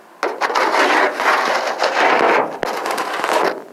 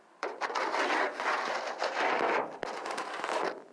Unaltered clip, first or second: first